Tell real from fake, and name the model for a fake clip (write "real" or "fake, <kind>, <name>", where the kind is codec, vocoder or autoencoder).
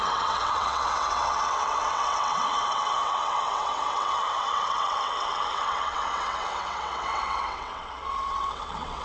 fake, vocoder, WaveNeXt